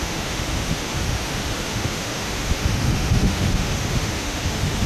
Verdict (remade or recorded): remade